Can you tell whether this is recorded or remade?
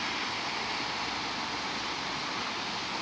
recorded